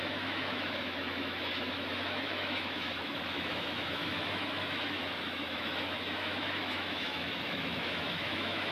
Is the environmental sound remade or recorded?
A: remade